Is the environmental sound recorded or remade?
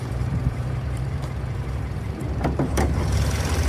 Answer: remade